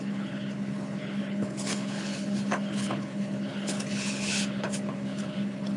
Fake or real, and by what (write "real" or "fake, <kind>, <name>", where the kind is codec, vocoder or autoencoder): fake, codec, HILCodec